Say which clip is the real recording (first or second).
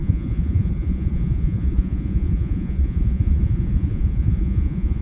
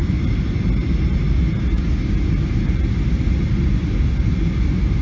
second